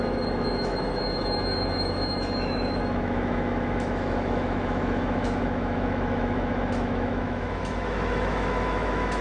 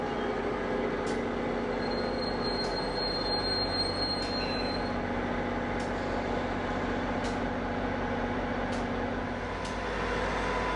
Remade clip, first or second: first